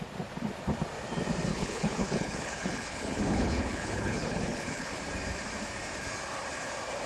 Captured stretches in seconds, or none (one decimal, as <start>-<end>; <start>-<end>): 0.0-1.5; 4.9-7.1

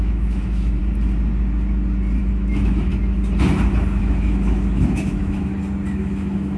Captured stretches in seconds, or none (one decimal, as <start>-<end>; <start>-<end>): 0.8-2.2; 2.9-4.0; 5.5-6.0

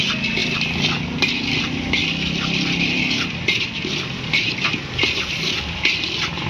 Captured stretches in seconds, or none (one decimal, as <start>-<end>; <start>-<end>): 0.0-6.5

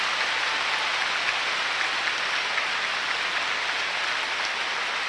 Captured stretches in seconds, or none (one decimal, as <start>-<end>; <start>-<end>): 0.0-5.1